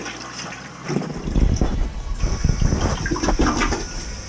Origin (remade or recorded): recorded